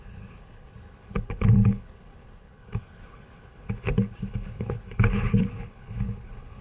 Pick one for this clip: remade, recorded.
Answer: remade